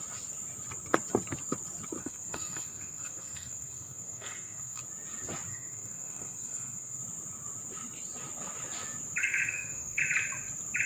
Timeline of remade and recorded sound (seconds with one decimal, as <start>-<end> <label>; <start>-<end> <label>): 0.0-2.0 recorded; 2.0-4.8 remade; 4.8-5.5 recorded; 5.5-7.0 remade; 7.0-9.2 recorded; 9.2-10.0 remade; 10.0-10.9 recorded